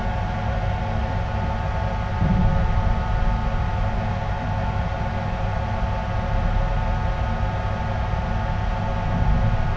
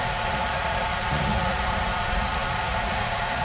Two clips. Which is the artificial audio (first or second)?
second